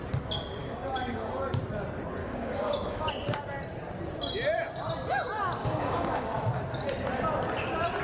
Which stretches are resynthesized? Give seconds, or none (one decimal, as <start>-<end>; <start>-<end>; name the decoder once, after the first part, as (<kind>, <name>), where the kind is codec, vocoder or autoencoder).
0.6-1.3 (codec, DAC); 2.2-3.1; 5.6-6.3